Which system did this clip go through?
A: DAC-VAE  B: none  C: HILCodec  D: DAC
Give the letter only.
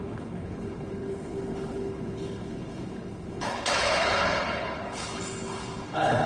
C